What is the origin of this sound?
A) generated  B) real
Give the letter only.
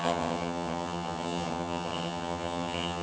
A